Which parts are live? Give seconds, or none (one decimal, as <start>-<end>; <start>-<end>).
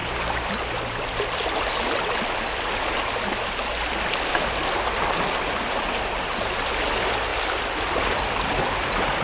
0.0-9.2